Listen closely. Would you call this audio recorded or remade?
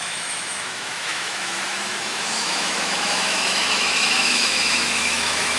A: remade